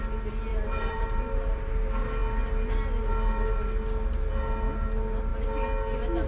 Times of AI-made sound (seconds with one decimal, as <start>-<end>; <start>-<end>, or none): 0.5-1.7